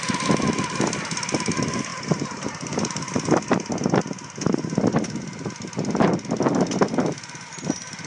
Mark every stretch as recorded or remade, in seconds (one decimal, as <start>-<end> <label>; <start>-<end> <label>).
0.0-8.1 recorded